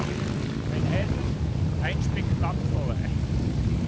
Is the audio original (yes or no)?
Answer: yes